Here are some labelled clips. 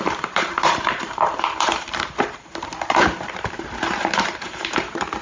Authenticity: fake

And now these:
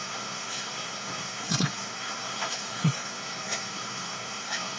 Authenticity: fake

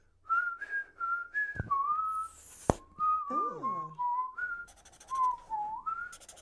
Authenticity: real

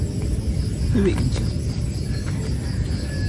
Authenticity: real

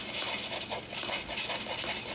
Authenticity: real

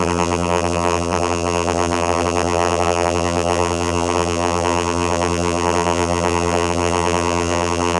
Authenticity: fake